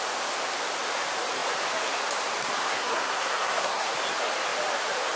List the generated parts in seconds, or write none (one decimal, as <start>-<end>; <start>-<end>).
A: 2.7-3.9